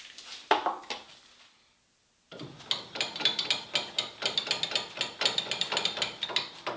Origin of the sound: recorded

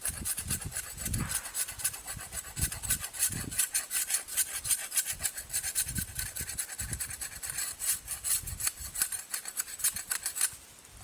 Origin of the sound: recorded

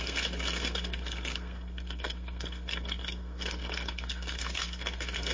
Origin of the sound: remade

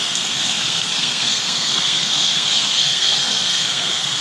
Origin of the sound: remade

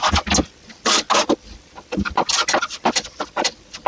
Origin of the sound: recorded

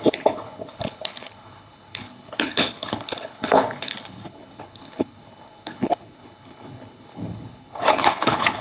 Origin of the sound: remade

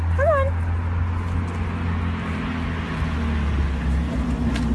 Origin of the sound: recorded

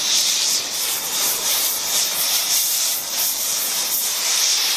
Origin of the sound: remade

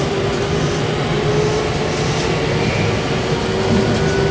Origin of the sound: recorded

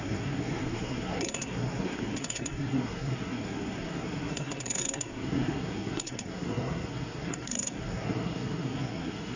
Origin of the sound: remade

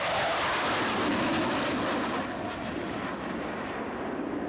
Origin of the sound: recorded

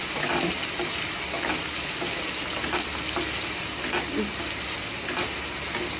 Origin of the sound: recorded